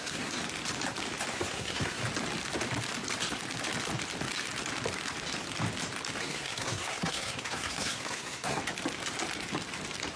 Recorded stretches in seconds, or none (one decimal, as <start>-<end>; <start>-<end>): 0.4-1.3; 2.0-6.2; 8.6-10.2